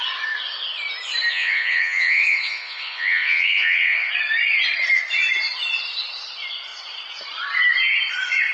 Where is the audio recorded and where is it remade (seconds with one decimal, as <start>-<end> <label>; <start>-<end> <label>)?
0.0-1.3 recorded; 1.3-4.1 remade; 4.1-8.5 recorded